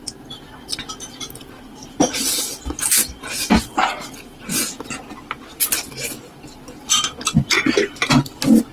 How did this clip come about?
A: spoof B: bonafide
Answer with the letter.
B